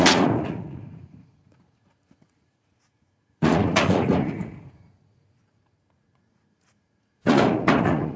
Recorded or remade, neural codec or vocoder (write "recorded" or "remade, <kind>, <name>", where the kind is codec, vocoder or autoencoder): remade, vocoder, Vocos